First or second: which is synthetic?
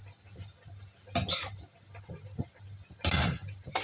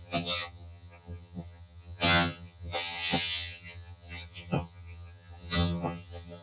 second